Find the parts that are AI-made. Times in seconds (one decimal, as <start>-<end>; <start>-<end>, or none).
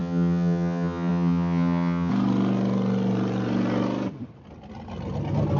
0.0-2.1